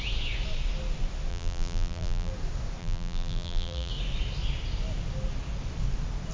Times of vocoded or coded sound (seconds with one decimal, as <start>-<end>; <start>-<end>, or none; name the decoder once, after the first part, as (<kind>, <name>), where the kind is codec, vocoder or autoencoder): 1.3-2.3 (vocoder, BigVGAN v2); 2.8-3.9